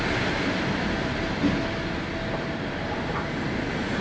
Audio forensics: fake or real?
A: real